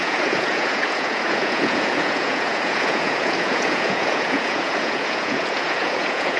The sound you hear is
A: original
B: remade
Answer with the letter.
B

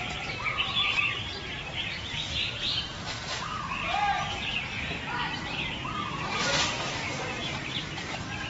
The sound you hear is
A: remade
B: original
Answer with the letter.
A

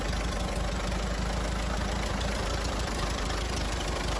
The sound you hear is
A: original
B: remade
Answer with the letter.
A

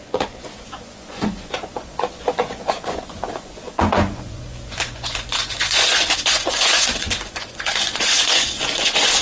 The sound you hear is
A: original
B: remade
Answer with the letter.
B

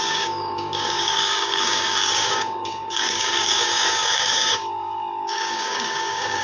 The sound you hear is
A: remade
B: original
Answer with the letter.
A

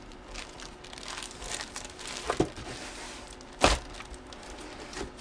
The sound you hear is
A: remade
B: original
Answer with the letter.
B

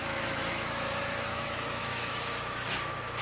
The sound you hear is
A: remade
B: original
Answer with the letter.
A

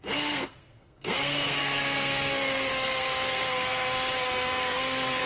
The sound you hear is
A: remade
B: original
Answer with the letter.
A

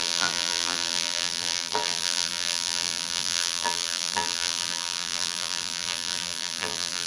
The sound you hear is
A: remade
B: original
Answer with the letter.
A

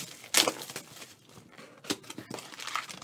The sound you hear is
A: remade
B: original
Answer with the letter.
B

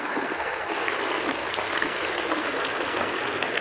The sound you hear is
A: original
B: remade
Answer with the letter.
B